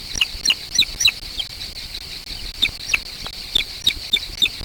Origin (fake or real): real